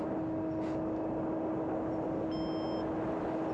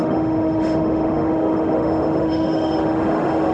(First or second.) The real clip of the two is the first